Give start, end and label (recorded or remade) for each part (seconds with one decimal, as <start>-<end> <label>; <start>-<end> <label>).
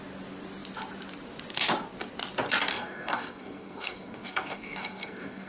0.0-2.7 recorded; 2.7-5.5 remade